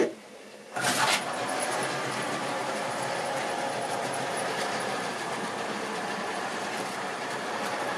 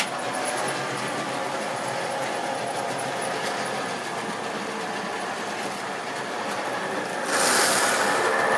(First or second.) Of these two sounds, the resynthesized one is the first